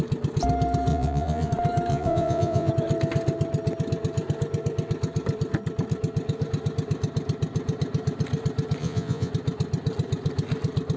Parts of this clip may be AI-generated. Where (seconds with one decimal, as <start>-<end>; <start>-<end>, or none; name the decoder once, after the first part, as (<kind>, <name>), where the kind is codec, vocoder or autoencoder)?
0.9-1.5 (vocoder, Vocos); 1.9-2.7; 8.8-9.3